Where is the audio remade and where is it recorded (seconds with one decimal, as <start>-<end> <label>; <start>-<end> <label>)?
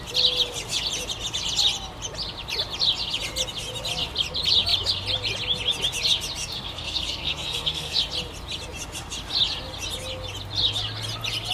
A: 0.0-6.4 recorded; 6.4-8.0 remade; 8.0-11.5 recorded